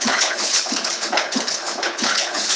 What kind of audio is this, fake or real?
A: fake